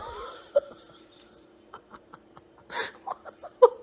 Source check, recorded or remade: remade